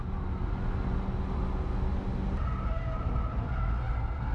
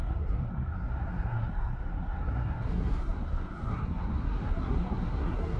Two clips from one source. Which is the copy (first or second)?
second